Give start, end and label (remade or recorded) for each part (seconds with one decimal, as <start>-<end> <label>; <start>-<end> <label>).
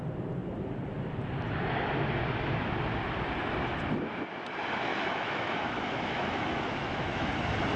0.0-4.9 recorded; 4.9-7.3 remade; 7.3-7.8 recorded